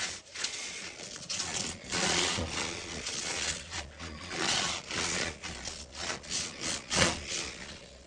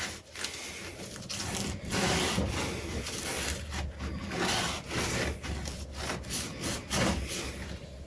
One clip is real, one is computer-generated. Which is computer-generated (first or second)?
first